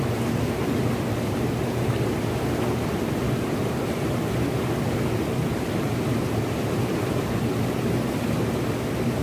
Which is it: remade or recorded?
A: recorded